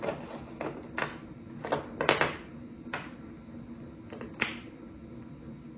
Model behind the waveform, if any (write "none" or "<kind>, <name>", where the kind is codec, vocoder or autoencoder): none